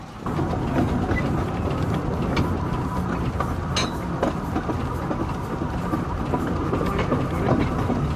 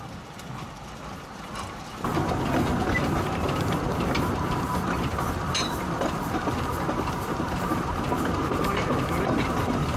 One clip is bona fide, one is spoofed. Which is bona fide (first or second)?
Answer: first